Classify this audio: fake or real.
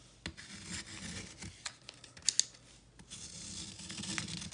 real